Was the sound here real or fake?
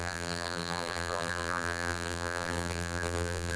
fake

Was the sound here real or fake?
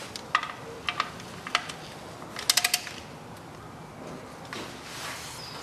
real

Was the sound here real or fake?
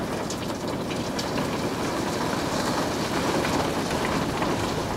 real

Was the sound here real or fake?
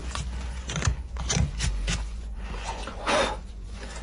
fake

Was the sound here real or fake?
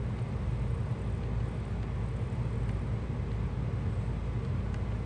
real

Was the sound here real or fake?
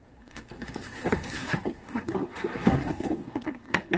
fake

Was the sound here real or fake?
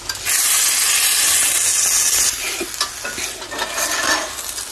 real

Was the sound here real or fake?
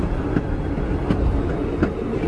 real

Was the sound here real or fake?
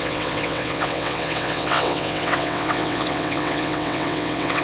fake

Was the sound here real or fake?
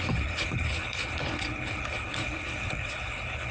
fake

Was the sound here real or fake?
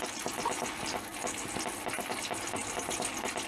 real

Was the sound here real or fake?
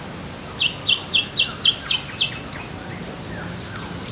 real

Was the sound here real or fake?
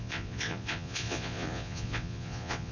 fake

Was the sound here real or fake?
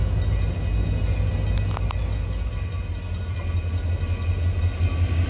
real